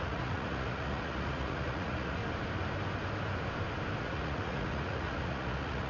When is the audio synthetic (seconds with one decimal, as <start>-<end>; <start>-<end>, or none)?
0.0-2.2; 4.0-5.9